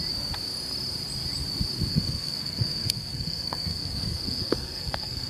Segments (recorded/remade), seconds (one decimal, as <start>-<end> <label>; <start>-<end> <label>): 0.0-1.9 recorded; 1.9-5.3 remade